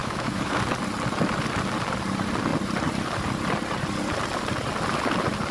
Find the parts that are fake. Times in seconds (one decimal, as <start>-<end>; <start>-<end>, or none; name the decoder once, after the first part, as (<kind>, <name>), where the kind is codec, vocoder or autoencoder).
0.0-0.6 (autoencoder, DAC-VAE)